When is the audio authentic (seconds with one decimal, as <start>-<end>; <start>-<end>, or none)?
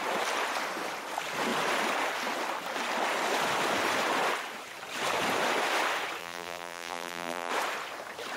0.0-6.2; 7.5-8.4